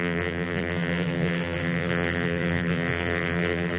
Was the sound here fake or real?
fake